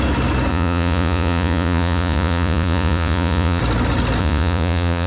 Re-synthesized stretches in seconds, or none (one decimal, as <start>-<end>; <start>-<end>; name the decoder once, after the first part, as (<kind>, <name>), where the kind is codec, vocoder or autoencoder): 0.5-3.6 (vocoder, Vocos); 4.2-5.1